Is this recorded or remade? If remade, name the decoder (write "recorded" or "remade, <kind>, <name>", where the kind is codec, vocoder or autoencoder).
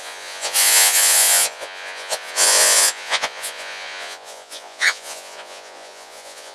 remade, vocoder, Vocos